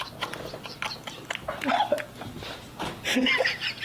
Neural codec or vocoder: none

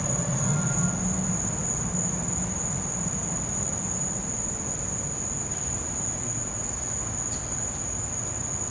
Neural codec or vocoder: none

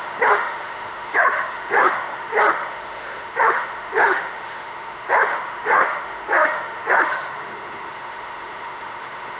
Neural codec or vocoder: autoencoder, DAC-VAE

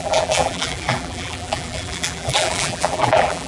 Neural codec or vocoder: vocoder, BigVGAN v2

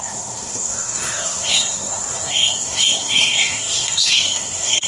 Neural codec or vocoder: codec, SNAC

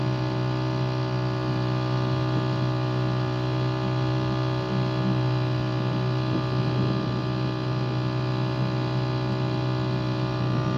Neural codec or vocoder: none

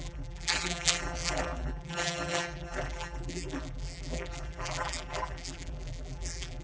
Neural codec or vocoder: vocoder, BigVGAN v2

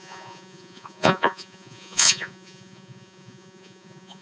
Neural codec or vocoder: vocoder, Vocos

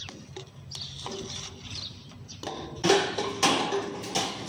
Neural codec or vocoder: none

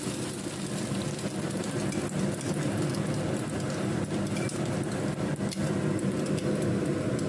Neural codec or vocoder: none